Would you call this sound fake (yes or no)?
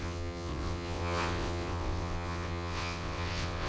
yes